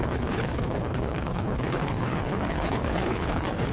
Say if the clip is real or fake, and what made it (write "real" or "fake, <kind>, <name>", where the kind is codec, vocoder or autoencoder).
fake, codec, HILCodec